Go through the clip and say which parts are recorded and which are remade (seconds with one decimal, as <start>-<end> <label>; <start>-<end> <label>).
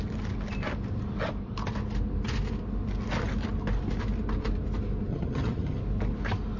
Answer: 0.0-5.1 recorded; 5.1-5.8 remade; 5.8-6.6 recorded